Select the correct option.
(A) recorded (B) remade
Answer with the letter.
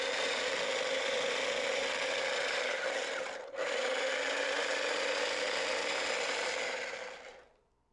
A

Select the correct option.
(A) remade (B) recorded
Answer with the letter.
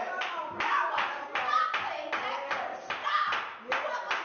B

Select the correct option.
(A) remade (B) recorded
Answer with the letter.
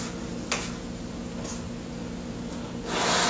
B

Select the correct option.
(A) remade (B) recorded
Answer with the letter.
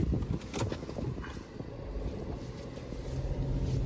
B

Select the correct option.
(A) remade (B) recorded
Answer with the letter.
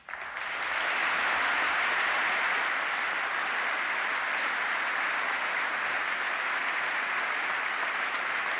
B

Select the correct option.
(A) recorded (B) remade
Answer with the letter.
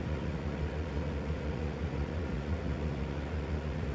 B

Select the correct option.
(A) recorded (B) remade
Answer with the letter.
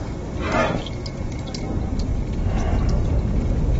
A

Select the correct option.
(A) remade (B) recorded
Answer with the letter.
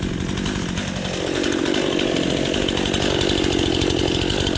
B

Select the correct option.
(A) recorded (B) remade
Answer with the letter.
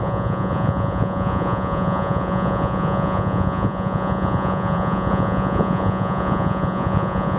B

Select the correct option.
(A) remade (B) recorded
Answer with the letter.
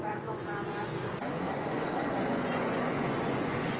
A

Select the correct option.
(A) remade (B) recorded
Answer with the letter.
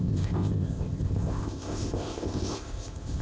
A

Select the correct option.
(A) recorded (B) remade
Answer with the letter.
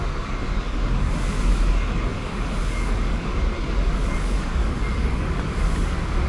B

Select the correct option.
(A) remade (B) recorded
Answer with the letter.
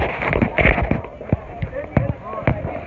B